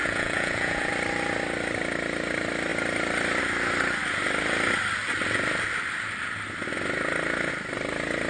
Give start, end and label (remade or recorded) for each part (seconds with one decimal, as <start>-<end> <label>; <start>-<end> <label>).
0.0-0.9 remade; 0.9-8.3 recorded